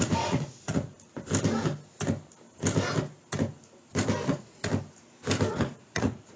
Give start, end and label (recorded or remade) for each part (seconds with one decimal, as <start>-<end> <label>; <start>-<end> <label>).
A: 0.0-0.9 remade; 0.9-4.3 recorded; 4.3-4.7 remade; 4.7-5.5 recorded; 5.5-6.4 remade